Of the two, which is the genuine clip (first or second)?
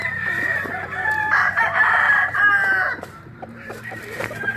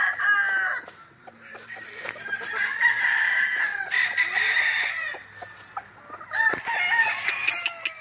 second